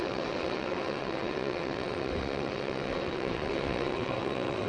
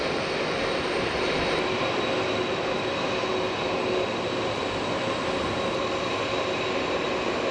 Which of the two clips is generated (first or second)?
first